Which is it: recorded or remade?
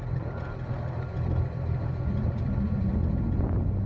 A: recorded